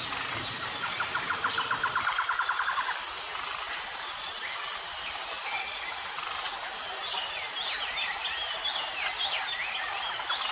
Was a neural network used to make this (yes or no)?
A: no